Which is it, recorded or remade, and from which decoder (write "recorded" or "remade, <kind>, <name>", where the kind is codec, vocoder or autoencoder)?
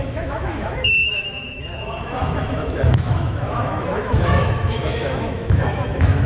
remade, autoencoder, DAC-VAE